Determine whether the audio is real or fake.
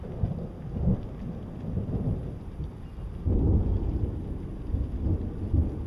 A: real